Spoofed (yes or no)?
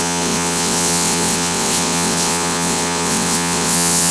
yes